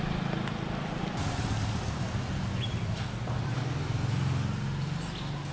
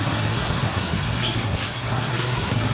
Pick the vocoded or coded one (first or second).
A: second